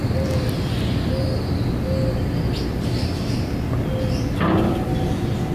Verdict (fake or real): real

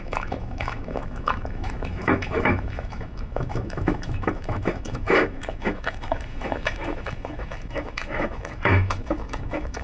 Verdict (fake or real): fake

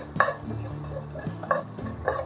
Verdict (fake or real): real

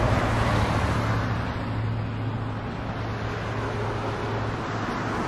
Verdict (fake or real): real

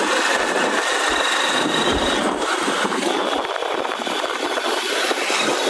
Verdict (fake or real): fake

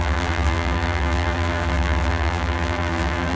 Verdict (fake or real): fake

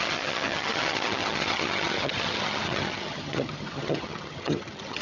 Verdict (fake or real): fake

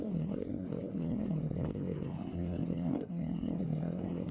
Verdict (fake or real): fake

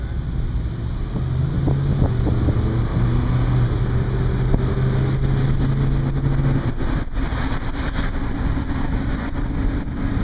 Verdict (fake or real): real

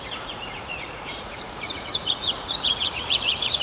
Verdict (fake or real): fake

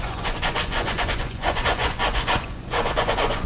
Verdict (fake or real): fake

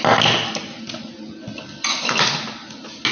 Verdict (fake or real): real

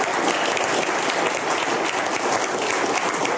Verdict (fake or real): real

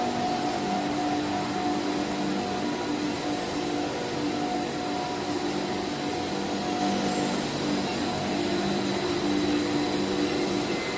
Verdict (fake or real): real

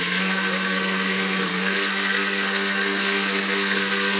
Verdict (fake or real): fake